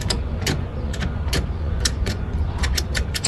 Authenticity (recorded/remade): remade